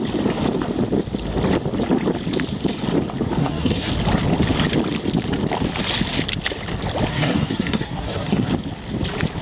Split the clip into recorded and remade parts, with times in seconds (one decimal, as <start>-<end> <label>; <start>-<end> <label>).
0.0-3.4 recorded; 3.4-3.9 remade; 3.9-7.1 recorded; 7.1-8.5 remade; 8.5-9.4 recorded